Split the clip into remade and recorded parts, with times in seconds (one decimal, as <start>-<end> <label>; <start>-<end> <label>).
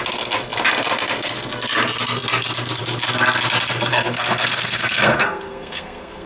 0.0-3.9 recorded; 3.9-6.3 remade